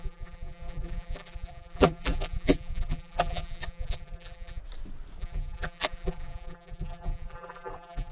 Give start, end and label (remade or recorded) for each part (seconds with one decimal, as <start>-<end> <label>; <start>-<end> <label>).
0.0-4.6 remade; 4.6-5.2 recorded; 5.2-8.1 remade